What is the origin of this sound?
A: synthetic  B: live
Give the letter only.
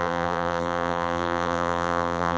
A